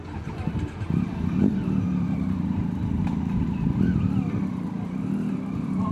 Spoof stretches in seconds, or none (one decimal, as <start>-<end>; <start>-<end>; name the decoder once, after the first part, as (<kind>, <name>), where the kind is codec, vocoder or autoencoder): none